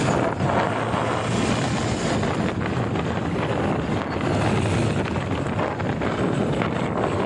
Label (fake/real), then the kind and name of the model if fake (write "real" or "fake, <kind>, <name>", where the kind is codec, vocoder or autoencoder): real